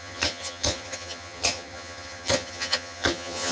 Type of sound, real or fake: fake